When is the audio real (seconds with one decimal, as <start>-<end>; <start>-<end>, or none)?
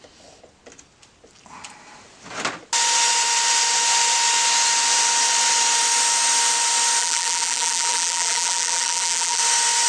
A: 0.0-7.0; 9.4-9.9